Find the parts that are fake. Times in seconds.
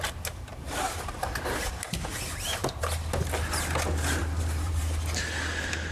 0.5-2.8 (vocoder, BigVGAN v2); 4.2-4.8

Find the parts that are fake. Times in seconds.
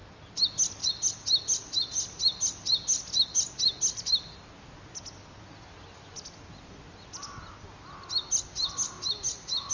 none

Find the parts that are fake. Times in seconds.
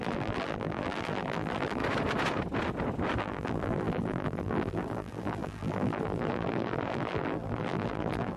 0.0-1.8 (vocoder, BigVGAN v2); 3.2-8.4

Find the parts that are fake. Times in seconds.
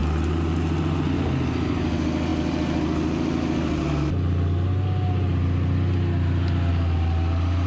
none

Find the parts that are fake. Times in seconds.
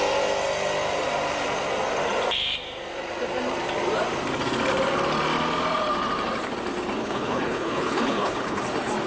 7.0-8.6 (codec, HILCodec)